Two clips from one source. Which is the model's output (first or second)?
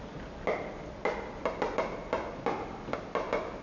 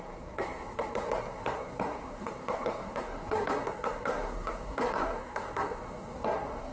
second